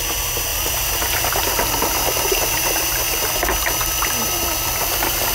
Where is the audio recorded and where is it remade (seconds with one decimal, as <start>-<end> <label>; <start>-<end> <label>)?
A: 0.0-5.3 recorded